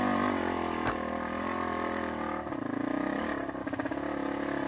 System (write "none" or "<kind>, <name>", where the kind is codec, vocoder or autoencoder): none